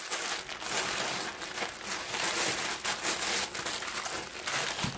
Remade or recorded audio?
recorded